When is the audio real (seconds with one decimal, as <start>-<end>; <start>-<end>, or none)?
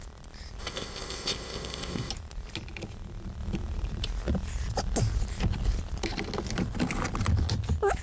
0.0-0.6; 2.1-8.0